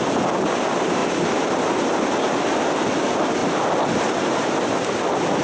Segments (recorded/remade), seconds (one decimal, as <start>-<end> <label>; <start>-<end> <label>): 0.0-5.4 recorded